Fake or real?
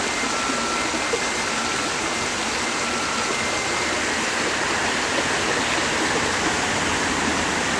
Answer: real